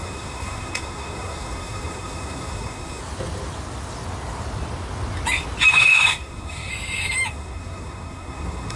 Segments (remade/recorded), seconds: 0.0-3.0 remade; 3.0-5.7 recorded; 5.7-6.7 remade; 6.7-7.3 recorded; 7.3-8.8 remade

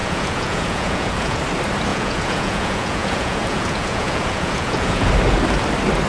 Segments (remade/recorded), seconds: 0.0-1.4 remade; 1.4-1.9 recorded; 1.9-5.1 remade; 5.1-6.1 recorded

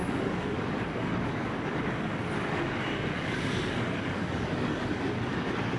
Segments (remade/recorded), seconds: 0.0-5.8 remade

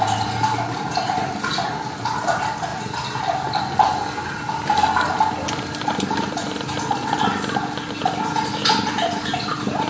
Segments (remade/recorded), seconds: 0.0-9.9 recorded

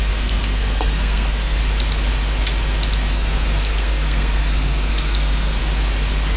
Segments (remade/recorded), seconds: 0.0-1.6 remade; 1.6-3.1 recorded; 3.1-5.6 remade; 5.6-6.4 recorded

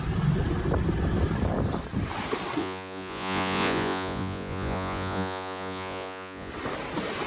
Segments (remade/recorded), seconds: 0.0-2.6 recorded; 2.6-6.5 remade; 6.5-7.3 recorded

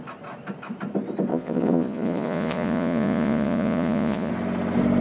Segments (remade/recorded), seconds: 0.0-1.3 recorded; 1.3-4.3 remade; 4.3-5.0 recorded

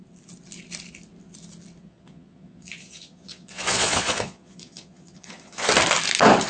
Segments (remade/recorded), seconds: 0.0-1.8 recorded; 1.8-5.7 remade; 5.7-6.5 recorded